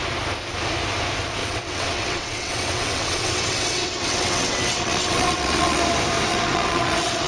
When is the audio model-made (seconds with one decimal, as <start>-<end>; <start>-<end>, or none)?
1.4-5.8; 6.3-7.3